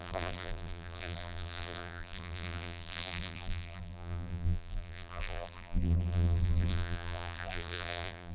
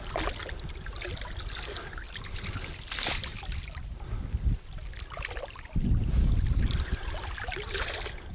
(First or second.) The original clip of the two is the second